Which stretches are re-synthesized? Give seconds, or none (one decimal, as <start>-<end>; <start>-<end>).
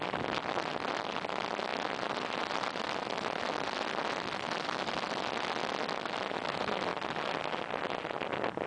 none